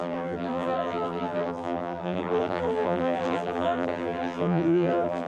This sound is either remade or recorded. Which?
remade